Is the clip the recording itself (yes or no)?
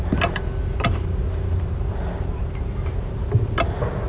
yes